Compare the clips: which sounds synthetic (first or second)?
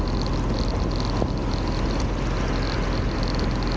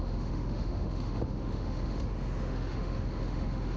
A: second